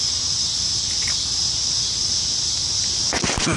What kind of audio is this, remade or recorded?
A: recorded